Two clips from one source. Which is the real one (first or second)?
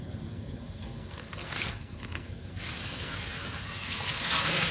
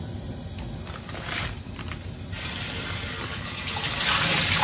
second